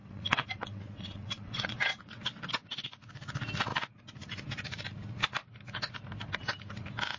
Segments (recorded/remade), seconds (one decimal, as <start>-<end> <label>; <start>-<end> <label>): 0.0-2.5 remade; 2.5-7.2 recorded